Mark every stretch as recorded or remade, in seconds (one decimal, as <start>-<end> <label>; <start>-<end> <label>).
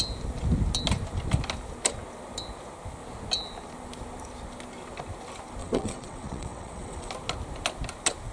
0.0-5.6 recorded; 5.6-7.1 remade; 7.1-8.3 recorded